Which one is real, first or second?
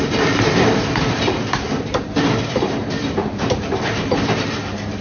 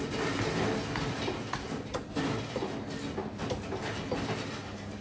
second